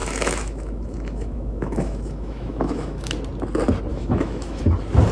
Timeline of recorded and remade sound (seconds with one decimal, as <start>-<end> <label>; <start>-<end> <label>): 0.0-3.1 remade; 3.1-3.9 recorded; 3.9-4.6 remade; 4.6-5.1 recorded